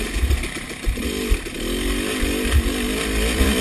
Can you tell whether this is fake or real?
real